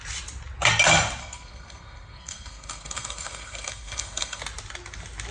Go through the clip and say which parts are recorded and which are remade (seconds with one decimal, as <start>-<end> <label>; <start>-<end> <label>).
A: 0.0-1.2 recorded; 1.2-4.4 remade; 4.4-5.3 recorded